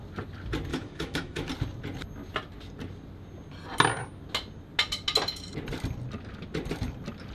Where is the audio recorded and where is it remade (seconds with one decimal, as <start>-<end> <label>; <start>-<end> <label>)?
0.0-0.7 recorded; 0.7-1.5 remade; 1.5-7.3 recorded